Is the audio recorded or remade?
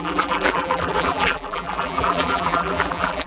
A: remade